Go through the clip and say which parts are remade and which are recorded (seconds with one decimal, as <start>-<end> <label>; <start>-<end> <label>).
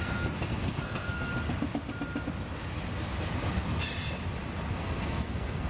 0.0-1.3 remade; 1.3-4.7 recorded; 4.7-5.7 remade